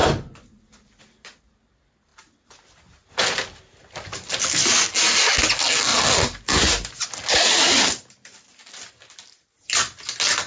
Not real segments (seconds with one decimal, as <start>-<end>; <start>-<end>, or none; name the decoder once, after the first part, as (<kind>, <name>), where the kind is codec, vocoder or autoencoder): none